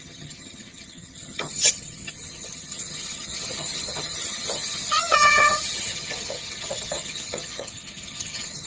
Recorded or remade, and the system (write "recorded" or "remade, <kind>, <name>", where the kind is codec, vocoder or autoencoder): remade, vocoder, HiFi-GAN